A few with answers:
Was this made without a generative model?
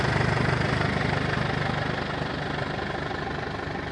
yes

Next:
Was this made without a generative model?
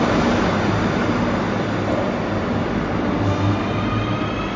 yes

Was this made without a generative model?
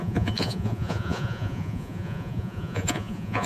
no